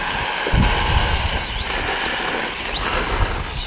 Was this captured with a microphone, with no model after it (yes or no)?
yes